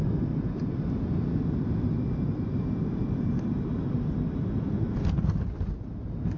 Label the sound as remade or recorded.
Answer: recorded